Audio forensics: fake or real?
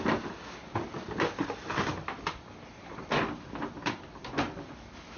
real